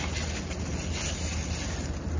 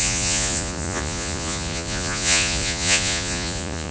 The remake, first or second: second